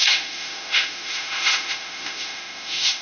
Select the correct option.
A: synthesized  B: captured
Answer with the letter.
A